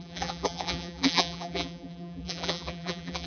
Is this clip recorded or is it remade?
remade